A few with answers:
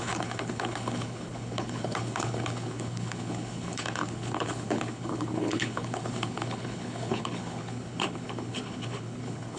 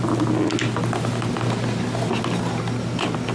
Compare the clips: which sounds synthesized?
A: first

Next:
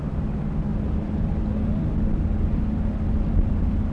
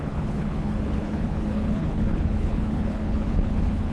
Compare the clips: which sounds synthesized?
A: second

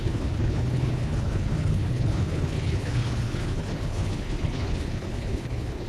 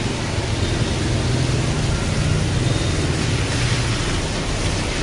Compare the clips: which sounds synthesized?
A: first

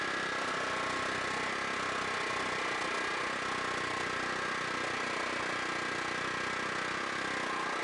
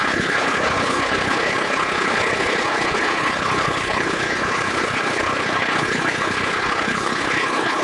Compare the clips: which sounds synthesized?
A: second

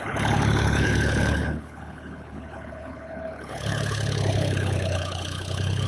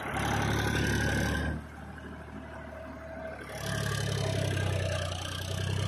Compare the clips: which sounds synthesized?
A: first